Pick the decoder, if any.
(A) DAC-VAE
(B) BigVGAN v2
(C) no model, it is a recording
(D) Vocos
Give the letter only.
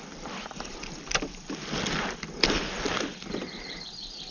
B